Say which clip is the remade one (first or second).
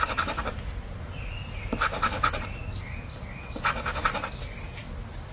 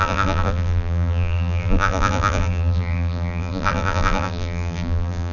second